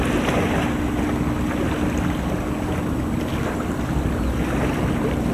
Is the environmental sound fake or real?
real